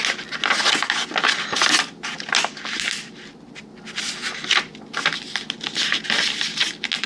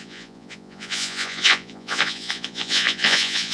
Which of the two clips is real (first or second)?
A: first